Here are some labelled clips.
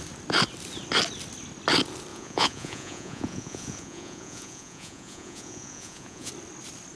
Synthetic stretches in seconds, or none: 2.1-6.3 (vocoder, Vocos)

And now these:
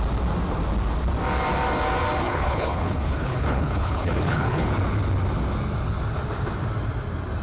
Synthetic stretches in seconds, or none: 2.2-4.7 (codec, HILCodec)

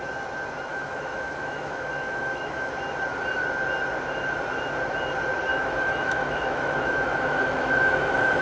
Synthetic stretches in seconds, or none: 0.7-2.7 (autoencoder, DAC-VAE); 5.5-8.4

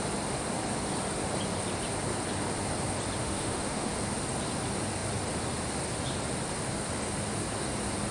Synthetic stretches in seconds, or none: 3.2-3.9 (autoencoder, DAC-VAE)

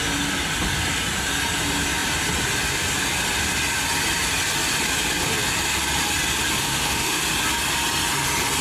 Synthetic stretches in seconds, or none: 6.6-7.2 (autoencoder, DAC-VAE)

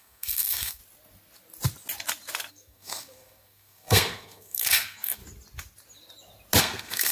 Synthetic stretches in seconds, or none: 0.0-0.8 (codec, SNAC); 2.5-5.2; 6.6-7.1